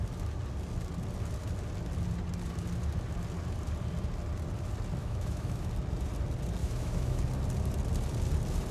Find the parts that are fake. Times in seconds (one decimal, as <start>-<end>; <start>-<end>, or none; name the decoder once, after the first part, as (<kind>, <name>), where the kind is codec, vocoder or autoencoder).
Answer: 5.0-5.7 (autoencoder, DAC-VAE); 6.6-7.2